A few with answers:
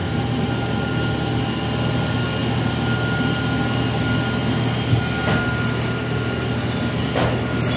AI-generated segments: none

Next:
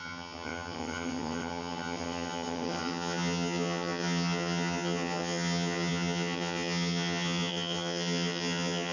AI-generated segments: 0.0-8.9 (vocoder, HiFi-GAN)

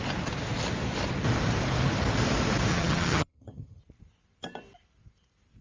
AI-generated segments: 2.7-3.8 (vocoder, HiFi-GAN)

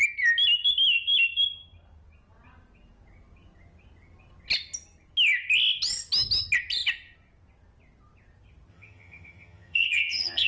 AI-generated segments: 8.7-10.5 (vocoder, HiFi-GAN)

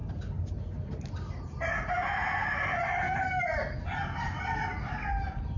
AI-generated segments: none

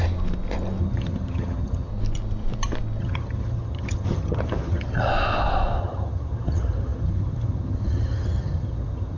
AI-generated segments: 0.8-1.9 (vocoder, HiFi-GAN); 3.0-5.1; 5.8-9.2

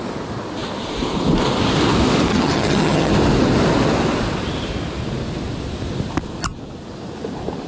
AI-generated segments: 2.3-3.1 (vocoder, HiFi-GAN)

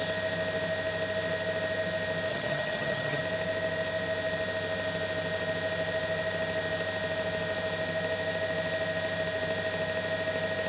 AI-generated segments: 2.3-3.2 (vocoder, HiFi-GAN)